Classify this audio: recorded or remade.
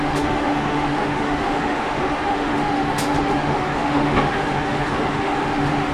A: remade